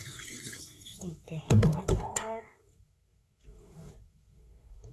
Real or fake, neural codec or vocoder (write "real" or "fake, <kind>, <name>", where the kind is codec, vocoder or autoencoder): fake, codec, SNAC